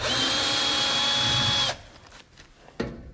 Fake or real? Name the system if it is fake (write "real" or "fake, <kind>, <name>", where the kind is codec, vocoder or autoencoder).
real